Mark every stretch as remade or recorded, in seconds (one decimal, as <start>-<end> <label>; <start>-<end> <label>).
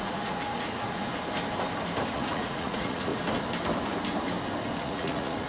0.0-1.1 remade; 1.1-2.1 recorded; 2.1-3.1 remade; 3.1-4.8 recorded; 4.8-5.5 remade